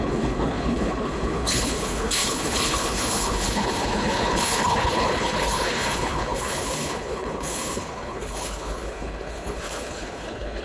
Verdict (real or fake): fake